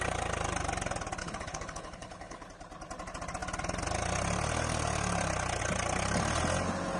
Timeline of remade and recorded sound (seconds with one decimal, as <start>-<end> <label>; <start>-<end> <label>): 0.0-1.2 recorded; 1.2-2.5 remade; 2.5-7.0 recorded